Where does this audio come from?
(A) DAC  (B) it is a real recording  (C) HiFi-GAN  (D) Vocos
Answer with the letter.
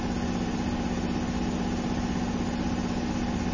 B